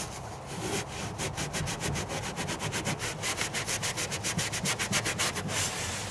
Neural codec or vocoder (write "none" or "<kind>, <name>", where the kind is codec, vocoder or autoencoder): none